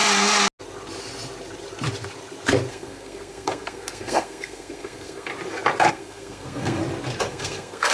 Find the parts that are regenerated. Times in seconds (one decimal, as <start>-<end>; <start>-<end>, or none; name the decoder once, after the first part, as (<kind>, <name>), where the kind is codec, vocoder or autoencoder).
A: 2.7-5.3 (codec, SNAC); 5.9-6.8; 7.3-7.9